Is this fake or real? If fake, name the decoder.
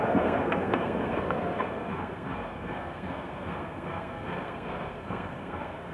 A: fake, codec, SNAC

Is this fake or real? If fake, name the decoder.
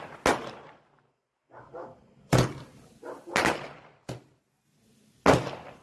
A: real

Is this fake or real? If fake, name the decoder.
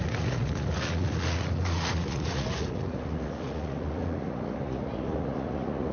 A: fake, vocoder, Vocos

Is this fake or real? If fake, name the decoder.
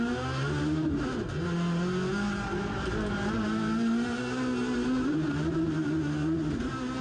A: real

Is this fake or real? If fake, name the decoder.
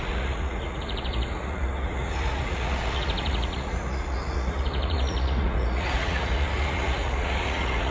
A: fake, vocoder, Vocos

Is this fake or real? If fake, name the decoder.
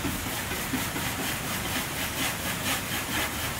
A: real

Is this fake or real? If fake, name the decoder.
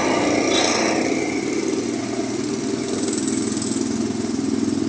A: real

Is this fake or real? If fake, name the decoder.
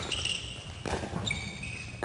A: real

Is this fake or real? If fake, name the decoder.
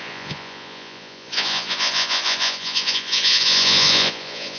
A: fake, vocoder, Vocos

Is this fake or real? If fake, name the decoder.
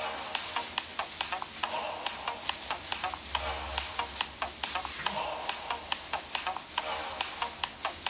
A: real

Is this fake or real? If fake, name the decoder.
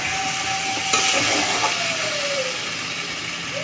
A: real